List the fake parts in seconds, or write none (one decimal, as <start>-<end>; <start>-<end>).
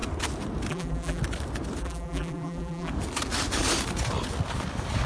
0.7-1.2; 1.8-2.9